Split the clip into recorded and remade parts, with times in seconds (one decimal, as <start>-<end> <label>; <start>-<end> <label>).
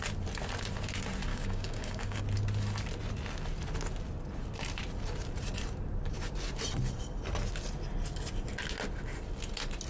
0.0-1.3 recorded; 1.3-2.2 remade; 2.2-9.9 recorded